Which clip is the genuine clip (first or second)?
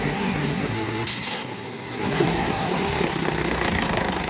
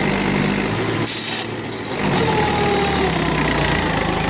second